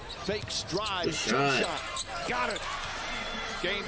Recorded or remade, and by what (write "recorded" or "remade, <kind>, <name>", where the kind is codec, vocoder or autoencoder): recorded